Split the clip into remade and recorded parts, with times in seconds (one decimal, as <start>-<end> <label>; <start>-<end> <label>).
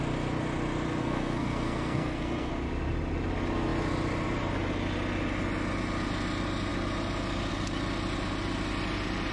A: 0.0-1.0 recorded; 1.0-2.5 remade; 2.5-9.3 recorded